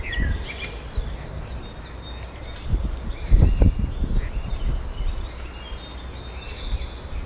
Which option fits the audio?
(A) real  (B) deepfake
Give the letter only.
A